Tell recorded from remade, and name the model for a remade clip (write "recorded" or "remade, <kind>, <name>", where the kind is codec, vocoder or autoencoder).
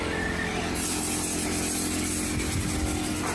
recorded